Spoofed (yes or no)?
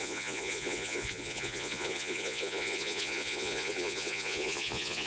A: yes